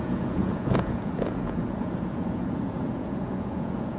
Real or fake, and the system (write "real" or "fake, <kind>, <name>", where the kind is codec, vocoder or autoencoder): fake, vocoder, Vocos